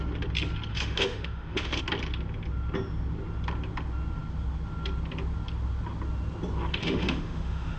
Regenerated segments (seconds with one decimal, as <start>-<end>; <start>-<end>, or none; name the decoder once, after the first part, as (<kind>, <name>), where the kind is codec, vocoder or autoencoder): 0.7-1.8 (autoencoder, DAC-VAE); 6.8-7.8